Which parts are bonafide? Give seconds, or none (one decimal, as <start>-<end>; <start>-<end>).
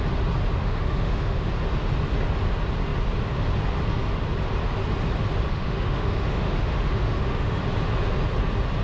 0.0-0.6; 1.5-5.5; 7.6-8.8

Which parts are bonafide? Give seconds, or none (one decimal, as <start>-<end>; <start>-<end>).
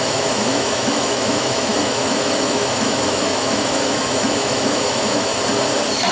5.3-6.1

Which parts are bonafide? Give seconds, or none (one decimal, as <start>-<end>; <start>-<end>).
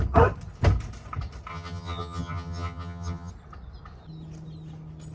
0.0-1.5; 3.3-5.1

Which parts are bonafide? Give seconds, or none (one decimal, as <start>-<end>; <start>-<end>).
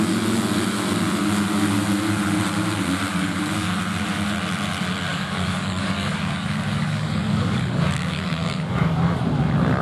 0.0-3.1; 3.8-5.1; 9.2-9.8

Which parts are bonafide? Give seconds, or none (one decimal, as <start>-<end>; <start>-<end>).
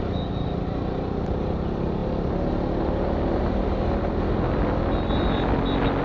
0.0-6.0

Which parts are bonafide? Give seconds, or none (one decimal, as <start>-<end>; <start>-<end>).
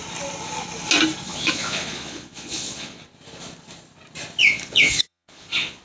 0.0-1.3; 3.0-4.4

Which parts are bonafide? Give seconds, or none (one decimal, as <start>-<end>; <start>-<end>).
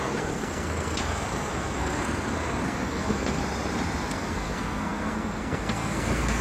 3.4-4.1